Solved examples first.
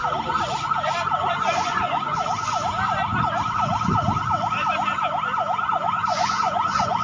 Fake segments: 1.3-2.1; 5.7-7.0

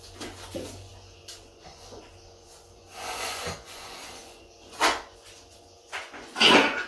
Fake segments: 0.0-6.9

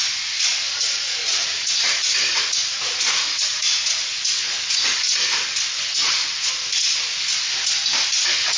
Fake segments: 0.6-4.7; 6.0-6.5

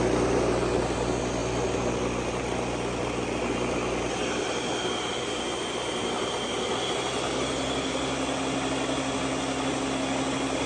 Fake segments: none

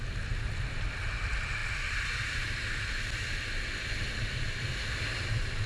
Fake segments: none

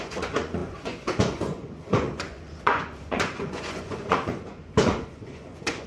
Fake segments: 0.0-5.9

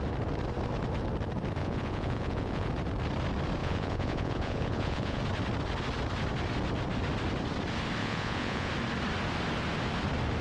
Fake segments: 1.6-2.7; 3.6-5.2; 8.0-8.7

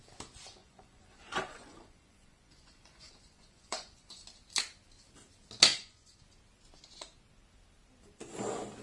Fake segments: 0.6-4.2; 5.7-6.2